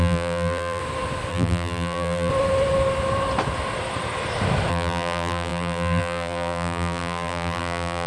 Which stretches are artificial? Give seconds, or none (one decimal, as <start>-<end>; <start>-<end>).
0.0-0.8; 1.3-2.3; 4.7-8.1